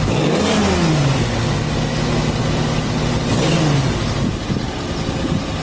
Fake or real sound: real